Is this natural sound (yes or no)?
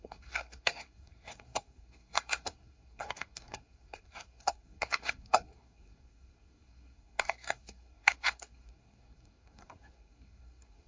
no